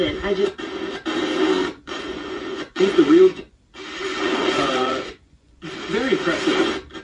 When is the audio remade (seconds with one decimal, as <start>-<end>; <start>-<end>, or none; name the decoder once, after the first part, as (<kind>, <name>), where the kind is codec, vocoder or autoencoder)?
1.6-3.6 (vocoder, Vocos); 4.0-5.6